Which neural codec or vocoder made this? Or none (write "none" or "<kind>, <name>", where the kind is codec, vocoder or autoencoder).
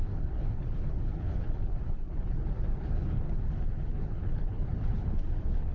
codec, HILCodec